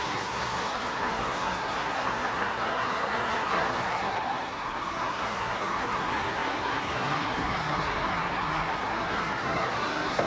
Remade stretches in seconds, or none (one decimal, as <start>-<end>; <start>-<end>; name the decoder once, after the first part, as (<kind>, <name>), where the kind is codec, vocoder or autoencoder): 0.0-10.3 (codec, SNAC)